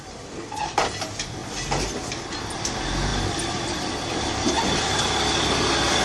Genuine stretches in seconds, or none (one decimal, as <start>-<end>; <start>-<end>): 0.0-3.1; 4.6-6.0